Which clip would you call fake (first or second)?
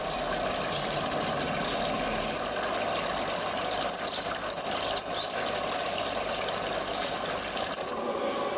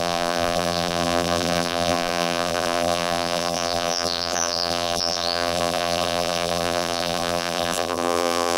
second